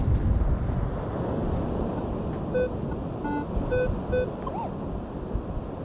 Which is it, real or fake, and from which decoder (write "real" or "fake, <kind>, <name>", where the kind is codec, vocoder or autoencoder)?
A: real